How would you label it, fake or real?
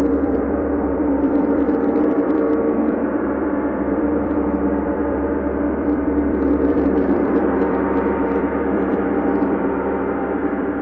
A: fake